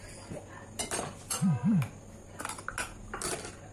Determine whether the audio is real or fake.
real